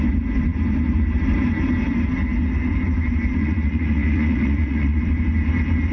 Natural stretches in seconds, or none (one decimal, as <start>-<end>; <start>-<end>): 0.0-3.4; 5.0-5.9